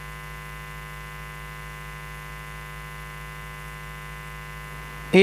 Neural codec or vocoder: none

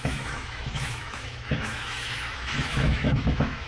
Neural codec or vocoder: autoencoder, DAC-VAE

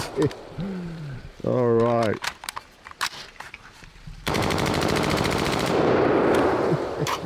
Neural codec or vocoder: vocoder, BigVGAN v2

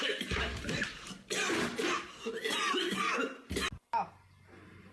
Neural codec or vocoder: none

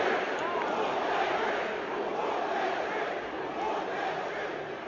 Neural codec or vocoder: vocoder, BigVGAN v2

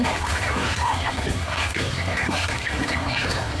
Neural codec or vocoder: codec, SNAC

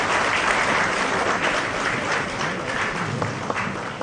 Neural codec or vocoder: vocoder, BigVGAN v2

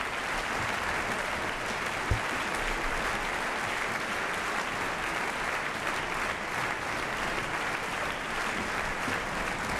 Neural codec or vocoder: none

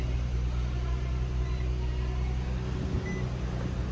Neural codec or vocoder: none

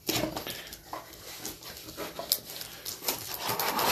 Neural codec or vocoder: none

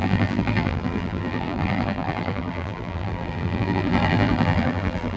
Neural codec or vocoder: vocoder, BigVGAN v2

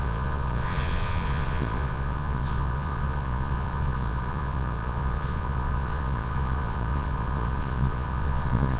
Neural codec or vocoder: vocoder, Vocos